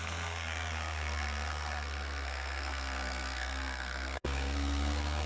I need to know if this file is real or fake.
fake